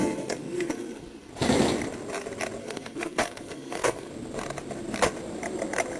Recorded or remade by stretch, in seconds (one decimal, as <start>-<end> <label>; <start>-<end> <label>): 0.0-1.3 remade; 1.3-2.6 recorded; 2.6-4.1 remade; 4.1-6.0 recorded